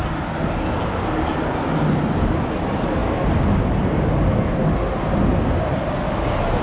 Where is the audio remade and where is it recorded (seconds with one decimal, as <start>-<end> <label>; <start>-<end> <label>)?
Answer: 0.0-6.6 recorded